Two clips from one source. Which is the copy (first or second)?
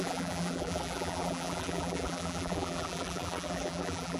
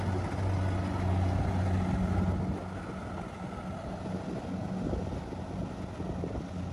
first